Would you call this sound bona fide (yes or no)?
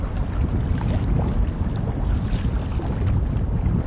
yes